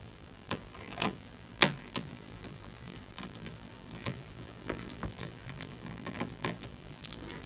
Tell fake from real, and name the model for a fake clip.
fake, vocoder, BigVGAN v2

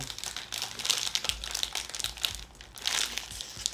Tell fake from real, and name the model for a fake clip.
real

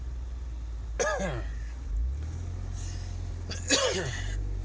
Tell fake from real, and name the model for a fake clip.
real